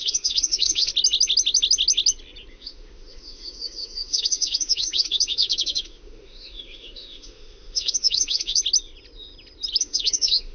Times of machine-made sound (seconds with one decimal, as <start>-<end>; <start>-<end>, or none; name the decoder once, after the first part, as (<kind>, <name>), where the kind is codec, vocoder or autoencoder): 0.0-0.9 (autoencoder, DAC-VAE); 2.5-8.6; 9.8-10.5